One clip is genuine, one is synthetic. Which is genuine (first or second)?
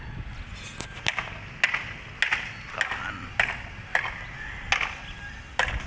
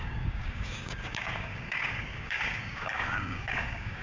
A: first